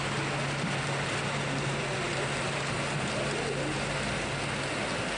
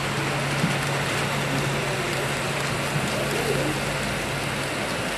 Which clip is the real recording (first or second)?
second